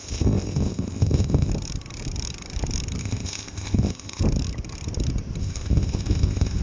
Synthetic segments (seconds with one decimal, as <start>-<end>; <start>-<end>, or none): 0.0-1.5; 3.0-4.2; 5.4-6.6